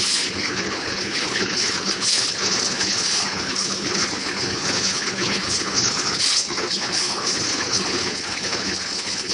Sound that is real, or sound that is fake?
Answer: fake